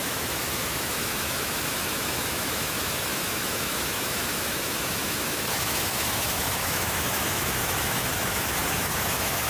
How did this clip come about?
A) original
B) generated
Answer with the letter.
B